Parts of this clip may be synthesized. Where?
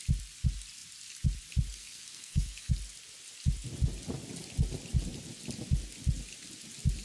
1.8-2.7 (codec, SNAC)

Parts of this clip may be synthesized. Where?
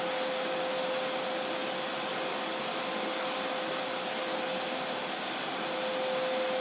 none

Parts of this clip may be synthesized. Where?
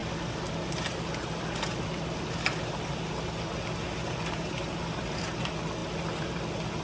none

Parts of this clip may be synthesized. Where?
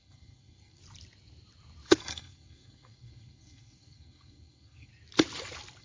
0.0-0.8 (codec, SNAC); 2.0-4.9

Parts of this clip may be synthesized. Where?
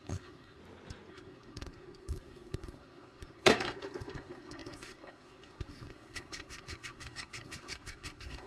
0.0-0.6 (codec, SNAC); 1.1-8.5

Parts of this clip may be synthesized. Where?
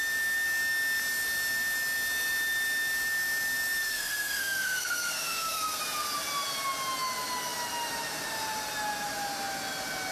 3.9-5.8 (codec, SNAC)